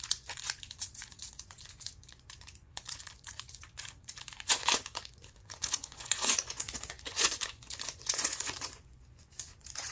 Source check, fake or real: fake